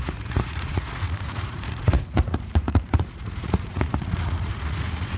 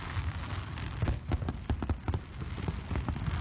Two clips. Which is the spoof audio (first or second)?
first